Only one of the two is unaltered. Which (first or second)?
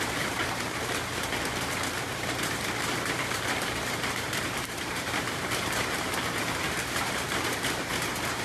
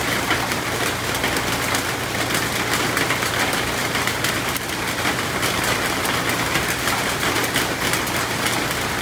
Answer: second